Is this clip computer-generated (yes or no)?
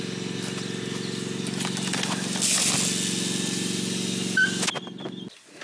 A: no